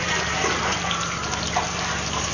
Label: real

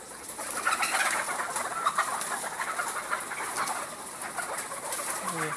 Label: real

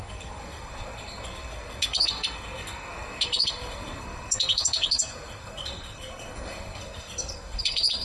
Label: fake